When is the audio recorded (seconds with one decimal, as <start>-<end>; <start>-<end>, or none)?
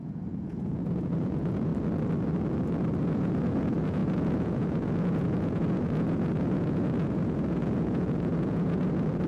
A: 1.7-3.0